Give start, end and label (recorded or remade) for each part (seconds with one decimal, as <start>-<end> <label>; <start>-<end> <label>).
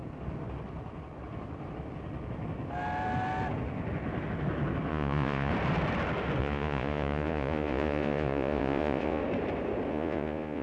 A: 0.0-4.9 recorded; 4.9-5.5 remade; 5.5-6.4 recorded; 6.4-9.2 remade; 9.2-9.9 recorded; 9.9-10.6 remade